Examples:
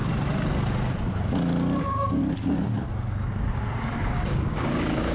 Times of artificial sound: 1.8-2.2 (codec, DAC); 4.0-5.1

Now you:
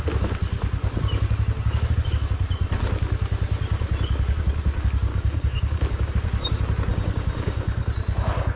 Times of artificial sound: 5.1-6.1 (codec, DAC); 6.9-7.9